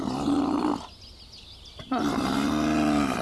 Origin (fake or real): real